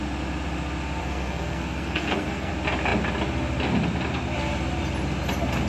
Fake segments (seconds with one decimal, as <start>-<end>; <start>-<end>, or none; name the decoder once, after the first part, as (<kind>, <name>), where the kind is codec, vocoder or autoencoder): 1.0-2.5 (codec, SNAC)